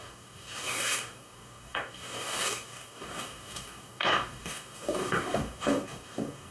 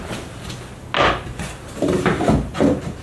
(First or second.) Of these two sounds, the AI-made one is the first